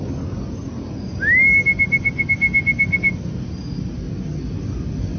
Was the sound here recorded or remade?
recorded